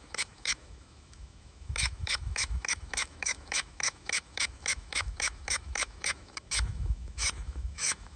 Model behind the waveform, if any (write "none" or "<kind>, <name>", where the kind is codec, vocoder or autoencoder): autoencoder, DAC-VAE